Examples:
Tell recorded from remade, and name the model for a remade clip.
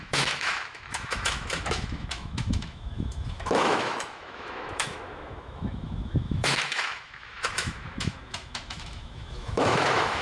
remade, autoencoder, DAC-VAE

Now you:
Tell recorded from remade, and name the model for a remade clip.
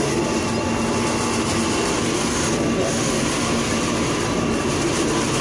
recorded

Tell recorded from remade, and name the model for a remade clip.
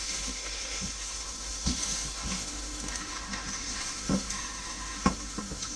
remade, autoencoder, DAC-VAE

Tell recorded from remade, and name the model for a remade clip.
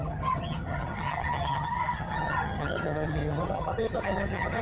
remade, vocoder, HiFi-GAN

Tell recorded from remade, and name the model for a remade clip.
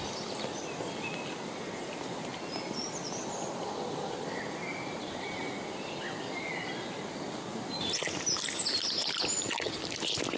recorded